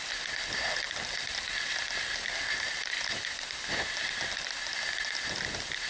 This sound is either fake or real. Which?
real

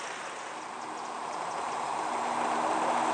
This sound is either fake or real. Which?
real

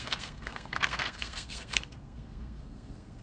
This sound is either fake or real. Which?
fake